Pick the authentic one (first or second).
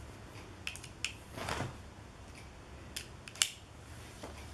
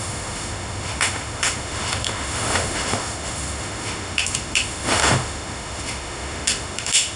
first